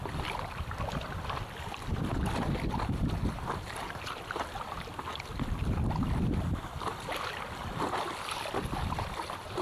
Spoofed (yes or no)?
no